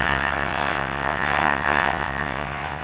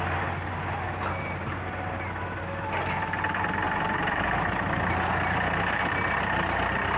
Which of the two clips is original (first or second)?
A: second